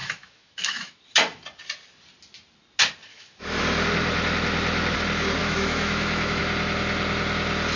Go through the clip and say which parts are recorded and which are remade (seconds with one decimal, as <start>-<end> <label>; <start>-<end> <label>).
0.0-1.0 remade; 1.0-3.1 recorded; 3.1-3.6 remade; 3.6-5.4 recorded; 5.4-6.4 remade; 6.4-7.8 recorded